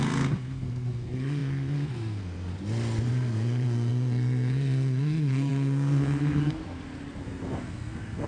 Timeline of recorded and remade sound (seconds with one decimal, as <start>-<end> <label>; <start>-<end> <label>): 0.0-2.5 remade; 2.5-3.1 recorded; 3.1-6.6 remade; 6.6-7.2 recorded; 7.2-8.3 remade